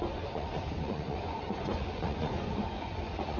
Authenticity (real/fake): fake